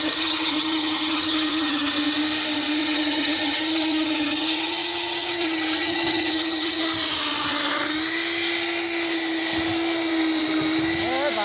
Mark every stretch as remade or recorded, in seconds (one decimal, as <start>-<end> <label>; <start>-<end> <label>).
0.0-1.9 remade; 1.9-2.8 recorded; 2.8-6.8 remade; 6.8-11.4 recorded